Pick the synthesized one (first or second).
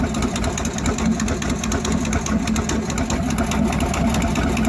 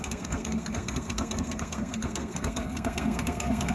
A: second